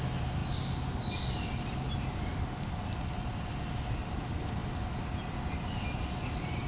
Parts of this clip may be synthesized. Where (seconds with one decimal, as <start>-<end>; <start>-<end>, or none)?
none